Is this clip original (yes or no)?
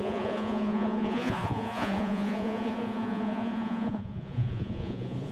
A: no